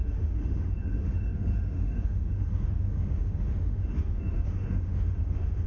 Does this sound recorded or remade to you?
remade